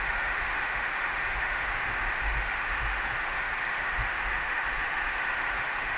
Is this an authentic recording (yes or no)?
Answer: no